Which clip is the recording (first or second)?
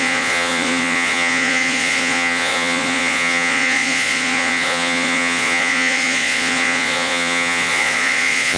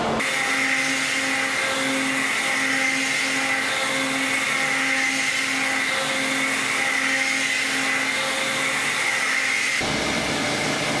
second